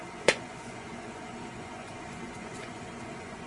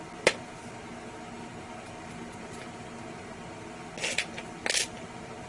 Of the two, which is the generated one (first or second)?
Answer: first